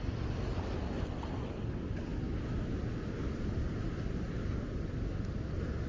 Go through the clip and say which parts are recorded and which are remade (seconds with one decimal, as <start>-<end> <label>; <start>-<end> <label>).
0.0-5.9 recorded